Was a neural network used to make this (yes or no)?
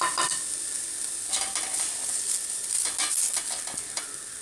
no